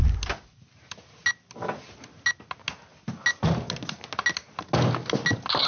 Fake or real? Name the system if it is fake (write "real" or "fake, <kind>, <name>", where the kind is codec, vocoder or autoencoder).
real